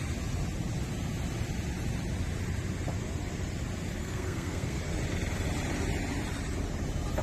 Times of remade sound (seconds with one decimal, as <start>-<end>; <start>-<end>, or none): 4.0-4.8